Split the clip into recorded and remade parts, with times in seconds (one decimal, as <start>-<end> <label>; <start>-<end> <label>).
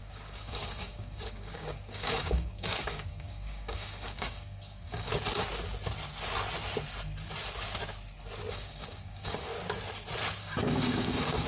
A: 0.0-5.1 remade; 5.1-8.5 recorded; 8.5-9.5 remade; 9.5-10.4 recorded; 10.4-11.5 remade